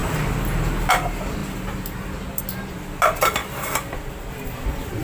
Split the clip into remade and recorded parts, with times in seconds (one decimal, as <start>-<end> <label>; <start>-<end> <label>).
0.0-5.0 recorded